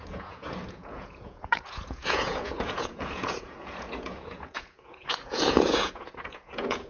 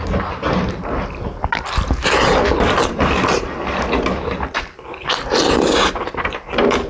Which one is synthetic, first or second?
first